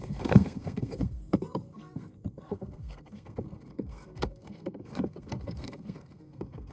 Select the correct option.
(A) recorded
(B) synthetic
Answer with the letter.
B